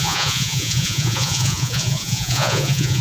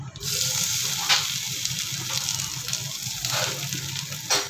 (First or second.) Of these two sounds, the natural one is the second